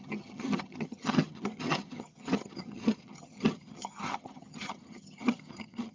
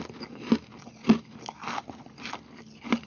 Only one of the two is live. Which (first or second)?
second